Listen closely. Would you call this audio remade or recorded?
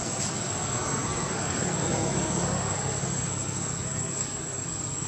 remade